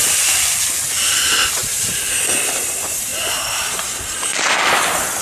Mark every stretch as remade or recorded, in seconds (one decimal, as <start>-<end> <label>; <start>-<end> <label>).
0.0-5.2 recorded